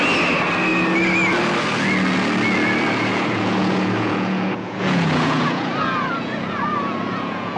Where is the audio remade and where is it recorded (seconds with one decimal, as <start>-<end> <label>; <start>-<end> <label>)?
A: 0.0-3.1 recorded; 3.1-7.6 remade